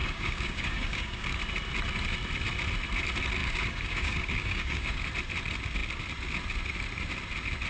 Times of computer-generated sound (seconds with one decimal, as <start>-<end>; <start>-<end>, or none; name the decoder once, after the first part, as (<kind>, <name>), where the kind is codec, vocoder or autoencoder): 0.0-1.4 (codec, DAC); 3.4-5.0